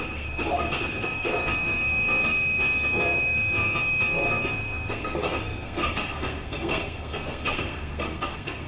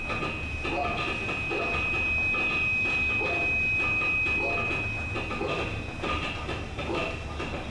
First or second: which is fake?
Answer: first